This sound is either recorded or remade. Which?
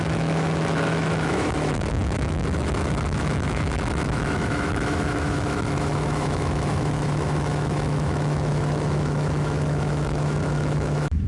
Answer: remade